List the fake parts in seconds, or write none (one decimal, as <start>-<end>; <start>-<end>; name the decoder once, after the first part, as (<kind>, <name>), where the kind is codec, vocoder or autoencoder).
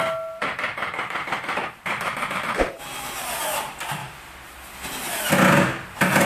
0.4-3.4 (vocoder, BigVGAN v2)